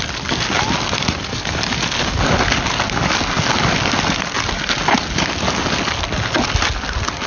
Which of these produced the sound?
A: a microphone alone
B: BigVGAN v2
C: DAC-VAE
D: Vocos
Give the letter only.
A